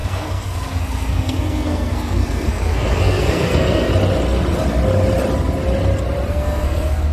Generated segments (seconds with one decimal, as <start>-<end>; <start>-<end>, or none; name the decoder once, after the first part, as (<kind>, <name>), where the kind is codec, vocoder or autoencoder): 0.0-3.9 (codec, SNAC); 6.3-7.1